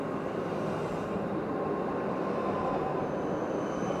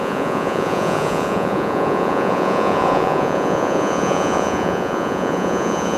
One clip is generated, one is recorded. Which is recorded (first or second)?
first